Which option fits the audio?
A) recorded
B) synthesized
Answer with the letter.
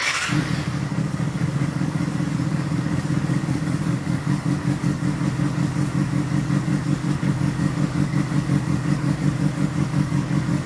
B